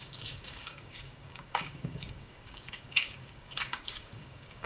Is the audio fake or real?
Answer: fake